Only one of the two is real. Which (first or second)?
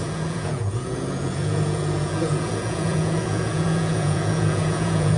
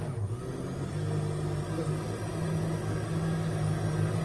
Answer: second